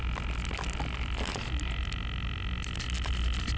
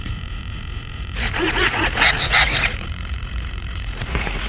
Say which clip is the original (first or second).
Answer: first